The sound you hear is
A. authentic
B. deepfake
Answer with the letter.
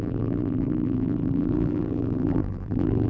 B